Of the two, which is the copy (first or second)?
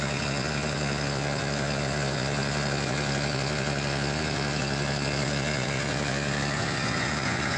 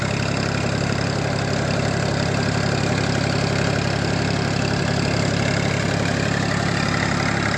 first